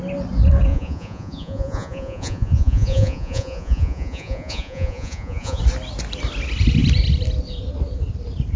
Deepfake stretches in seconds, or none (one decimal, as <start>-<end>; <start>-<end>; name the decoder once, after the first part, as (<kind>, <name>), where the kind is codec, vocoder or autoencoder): 0.7-5.6 (vocoder, Vocos)